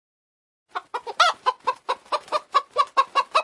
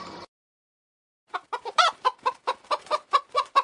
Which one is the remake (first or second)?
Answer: second